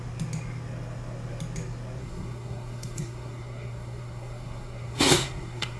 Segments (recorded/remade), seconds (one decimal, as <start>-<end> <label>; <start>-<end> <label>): 0.0-2.0 recorded; 2.0-5.8 remade